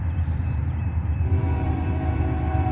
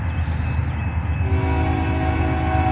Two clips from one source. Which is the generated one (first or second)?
first